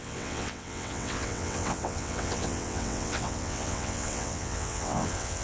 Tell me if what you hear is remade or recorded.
remade